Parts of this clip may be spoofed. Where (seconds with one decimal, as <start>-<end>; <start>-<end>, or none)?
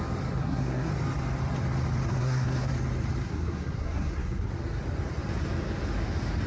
0.4-0.9; 2.1-2.7; 3.2-4.5